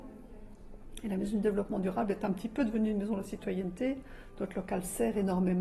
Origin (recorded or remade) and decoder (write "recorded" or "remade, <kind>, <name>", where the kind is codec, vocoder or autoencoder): recorded